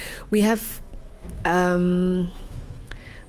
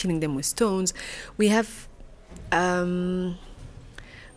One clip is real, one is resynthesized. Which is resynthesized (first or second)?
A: first